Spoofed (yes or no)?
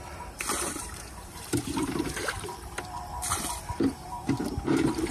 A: yes